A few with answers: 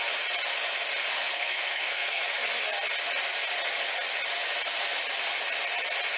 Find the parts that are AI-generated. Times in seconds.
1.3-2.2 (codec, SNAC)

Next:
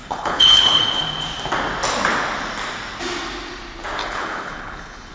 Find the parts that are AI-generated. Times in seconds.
0.0-0.8 (codec, HILCodec); 4.0-5.1

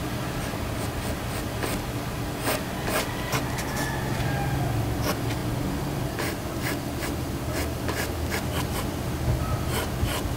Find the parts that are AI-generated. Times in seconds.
none

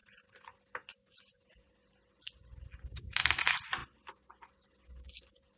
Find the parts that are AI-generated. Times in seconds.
none